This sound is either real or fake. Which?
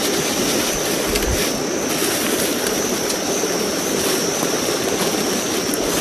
real